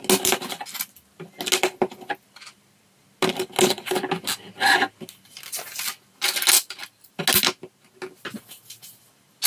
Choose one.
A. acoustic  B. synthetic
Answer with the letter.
A